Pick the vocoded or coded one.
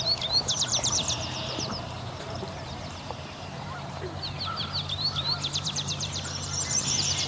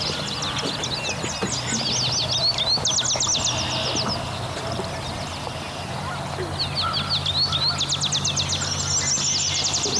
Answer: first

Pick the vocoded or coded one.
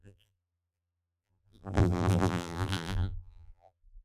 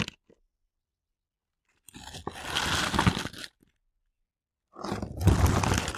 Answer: first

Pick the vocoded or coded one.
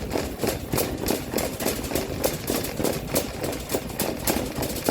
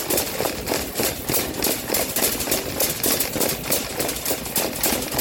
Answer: second